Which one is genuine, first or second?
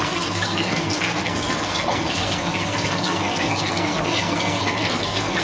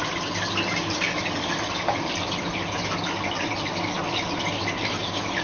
second